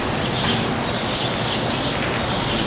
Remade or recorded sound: recorded